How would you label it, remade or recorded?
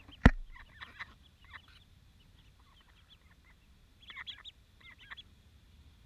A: recorded